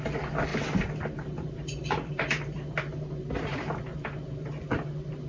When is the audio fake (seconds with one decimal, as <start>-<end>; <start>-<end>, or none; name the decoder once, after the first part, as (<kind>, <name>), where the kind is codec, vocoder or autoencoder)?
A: 0.5-3.7 (vocoder, BigVGAN v2)